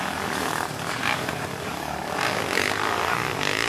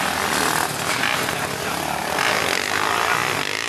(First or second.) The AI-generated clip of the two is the first